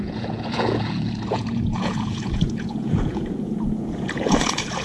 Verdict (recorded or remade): remade